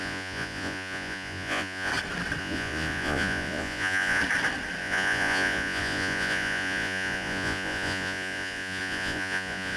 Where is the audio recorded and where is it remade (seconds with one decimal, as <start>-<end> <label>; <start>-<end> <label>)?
0.0-1.9 remade; 1.9-2.4 recorded; 2.4-4.2 remade; 4.2-4.8 recorded; 4.8-9.8 remade